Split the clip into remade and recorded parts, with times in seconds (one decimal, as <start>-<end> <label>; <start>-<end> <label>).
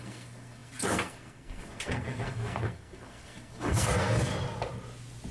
0.0-4.3 remade; 4.3-5.3 recorded